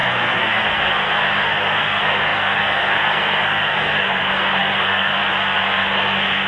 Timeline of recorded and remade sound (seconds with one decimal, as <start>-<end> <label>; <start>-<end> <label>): 0.0-6.5 remade